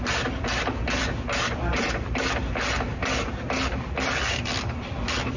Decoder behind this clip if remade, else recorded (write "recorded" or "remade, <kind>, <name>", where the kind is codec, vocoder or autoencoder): recorded